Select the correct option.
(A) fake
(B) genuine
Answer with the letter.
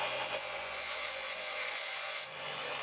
A